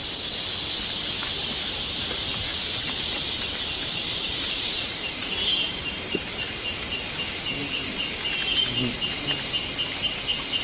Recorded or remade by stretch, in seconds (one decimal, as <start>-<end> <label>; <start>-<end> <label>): 0.0-2.0 recorded; 2.0-2.5 remade; 2.5-3.6 recorded; 3.6-7.6 remade; 7.6-10.0 recorded; 10.0-10.6 remade